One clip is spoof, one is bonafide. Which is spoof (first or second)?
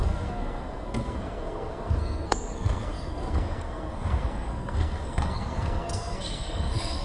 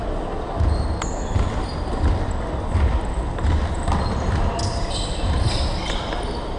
first